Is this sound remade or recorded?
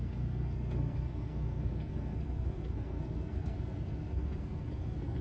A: remade